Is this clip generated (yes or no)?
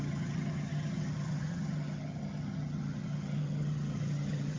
yes